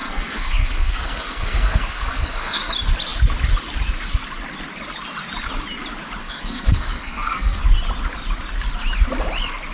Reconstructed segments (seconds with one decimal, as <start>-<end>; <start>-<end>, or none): 0.0-2.7; 6.2-7.6